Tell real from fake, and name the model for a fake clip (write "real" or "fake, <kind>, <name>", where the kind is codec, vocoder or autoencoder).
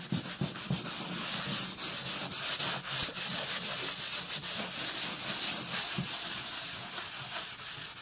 real